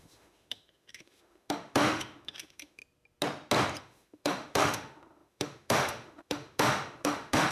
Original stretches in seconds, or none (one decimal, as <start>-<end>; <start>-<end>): 2.8-3.8